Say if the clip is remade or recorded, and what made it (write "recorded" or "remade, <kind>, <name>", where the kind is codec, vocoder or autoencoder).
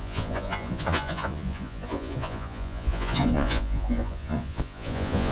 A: remade, vocoder, Vocos